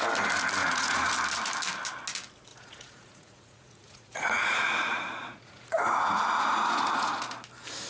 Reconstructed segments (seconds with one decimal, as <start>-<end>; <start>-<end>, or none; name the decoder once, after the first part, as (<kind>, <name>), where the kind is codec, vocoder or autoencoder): 0.6-1.1 (vocoder, Vocos); 2.5-7.2